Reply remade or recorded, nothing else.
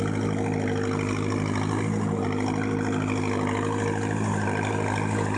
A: recorded